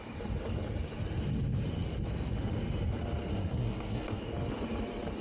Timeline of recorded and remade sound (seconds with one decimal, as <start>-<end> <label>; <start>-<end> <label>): 0.0-3.3 recorded; 3.3-4.2 remade; 4.2-5.2 recorded